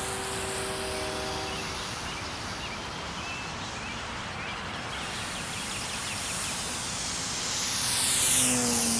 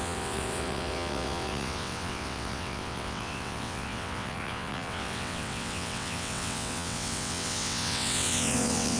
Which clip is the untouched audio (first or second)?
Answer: first